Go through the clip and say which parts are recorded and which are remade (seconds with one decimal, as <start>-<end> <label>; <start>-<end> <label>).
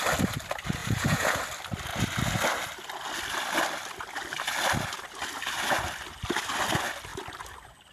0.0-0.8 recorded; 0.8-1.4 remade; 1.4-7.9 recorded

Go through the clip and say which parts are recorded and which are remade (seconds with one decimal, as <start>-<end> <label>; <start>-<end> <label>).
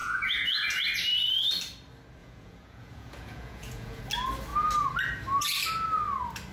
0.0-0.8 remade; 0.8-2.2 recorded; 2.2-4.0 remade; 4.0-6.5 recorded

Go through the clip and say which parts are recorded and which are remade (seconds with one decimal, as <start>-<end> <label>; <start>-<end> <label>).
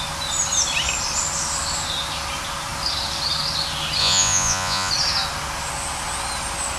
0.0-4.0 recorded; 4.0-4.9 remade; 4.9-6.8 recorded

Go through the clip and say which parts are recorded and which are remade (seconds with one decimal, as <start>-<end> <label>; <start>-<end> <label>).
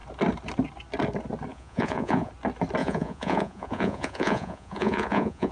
0.0-1.5 recorded; 1.5-2.3 remade; 2.3-2.8 recorded; 2.8-5.5 remade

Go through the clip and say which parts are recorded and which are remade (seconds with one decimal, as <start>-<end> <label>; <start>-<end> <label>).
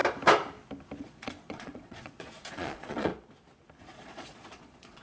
0.0-1.0 recorded; 1.0-3.1 remade; 3.1-3.8 recorded; 3.8-5.0 remade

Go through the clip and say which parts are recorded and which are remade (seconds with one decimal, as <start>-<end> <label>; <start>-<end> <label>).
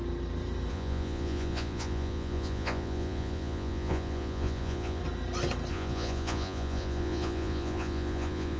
0.0-0.7 recorded; 0.7-5.0 remade; 5.0-5.7 recorded; 5.7-8.6 remade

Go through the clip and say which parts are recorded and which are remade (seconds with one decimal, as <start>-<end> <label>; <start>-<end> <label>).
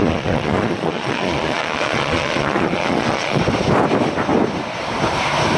0.0-3.4 remade; 3.4-5.6 recorded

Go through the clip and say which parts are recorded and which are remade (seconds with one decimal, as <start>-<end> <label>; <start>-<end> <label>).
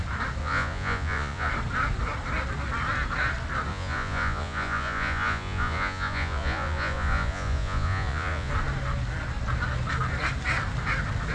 0.0-0.4 recorded; 0.4-1.5 remade; 1.5-3.7 recorded; 3.7-8.5 remade; 8.5-11.3 recorded